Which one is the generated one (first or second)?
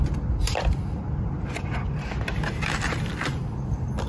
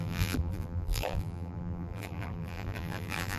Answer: second